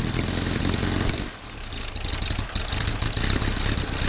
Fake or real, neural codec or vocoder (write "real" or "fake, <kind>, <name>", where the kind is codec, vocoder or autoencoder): fake, vocoder, BigVGAN v2